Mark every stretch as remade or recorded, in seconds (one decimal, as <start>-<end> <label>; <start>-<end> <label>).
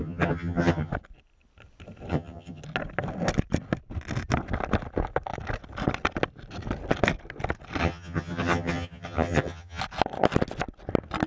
0.0-0.9 remade; 0.9-2.1 recorded; 2.1-2.6 remade; 2.6-7.8 recorded; 7.8-9.8 remade; 9.8-11.3 recorded